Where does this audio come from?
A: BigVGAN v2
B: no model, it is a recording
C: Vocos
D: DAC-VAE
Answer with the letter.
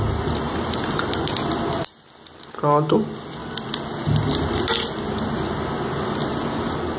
B